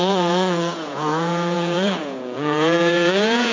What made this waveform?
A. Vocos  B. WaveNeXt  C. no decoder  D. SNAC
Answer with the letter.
A